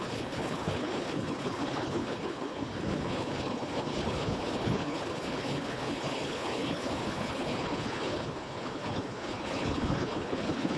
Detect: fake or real fake